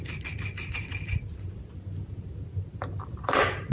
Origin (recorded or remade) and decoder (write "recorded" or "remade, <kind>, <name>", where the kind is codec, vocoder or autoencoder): recorded